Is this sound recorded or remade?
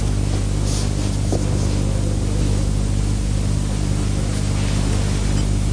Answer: recorded